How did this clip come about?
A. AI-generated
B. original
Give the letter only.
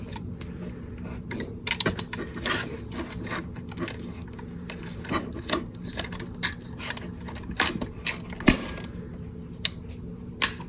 B